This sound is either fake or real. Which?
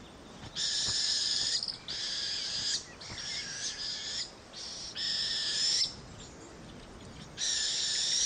real